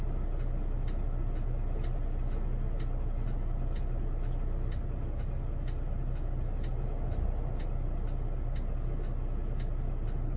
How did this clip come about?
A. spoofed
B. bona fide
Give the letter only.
B